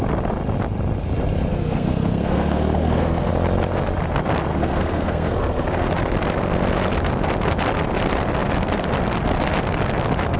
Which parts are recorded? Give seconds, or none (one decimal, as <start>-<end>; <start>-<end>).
0.0-1.5; 3.3-4.5; 5.9-10.4